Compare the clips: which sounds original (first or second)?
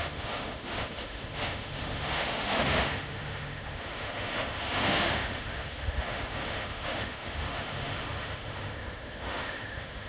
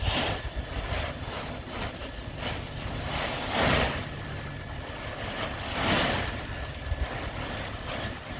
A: second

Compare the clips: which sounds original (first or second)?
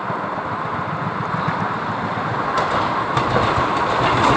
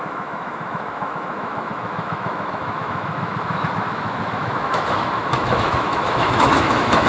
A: first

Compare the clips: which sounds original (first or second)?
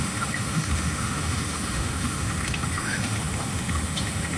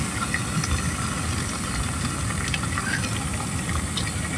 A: second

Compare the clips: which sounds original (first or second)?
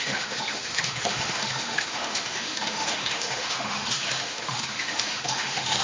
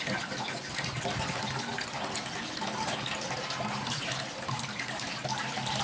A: second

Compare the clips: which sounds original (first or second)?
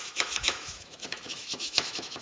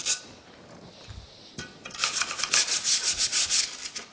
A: second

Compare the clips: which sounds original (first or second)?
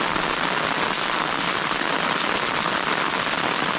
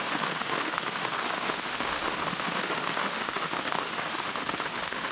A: first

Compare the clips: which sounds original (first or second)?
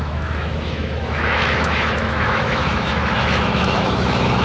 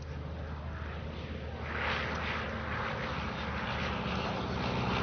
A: second